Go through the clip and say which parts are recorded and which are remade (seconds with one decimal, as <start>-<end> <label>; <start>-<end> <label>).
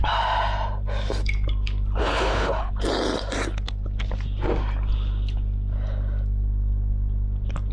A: 0.0-2.0 recorded; 2.0-2.7 remade; 2.7-7.7 recorded